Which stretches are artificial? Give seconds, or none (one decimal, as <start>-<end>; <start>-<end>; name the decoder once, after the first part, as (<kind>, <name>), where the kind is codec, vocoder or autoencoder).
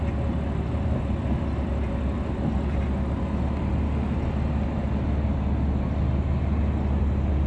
none